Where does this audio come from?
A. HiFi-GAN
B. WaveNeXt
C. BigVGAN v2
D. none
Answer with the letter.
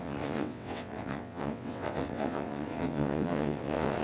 B